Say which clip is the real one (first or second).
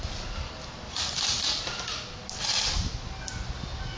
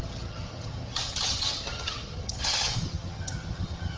first